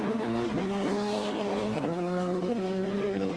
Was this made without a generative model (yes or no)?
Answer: no